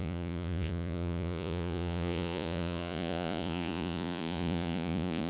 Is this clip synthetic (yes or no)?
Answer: yes